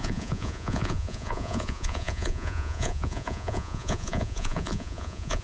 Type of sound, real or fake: fake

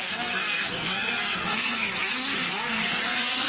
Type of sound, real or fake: fake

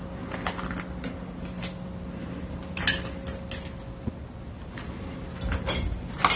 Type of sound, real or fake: real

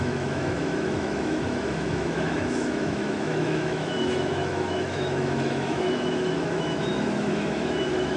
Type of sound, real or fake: fake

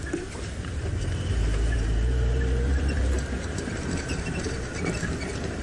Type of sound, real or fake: fake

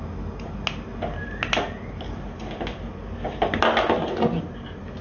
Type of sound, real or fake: real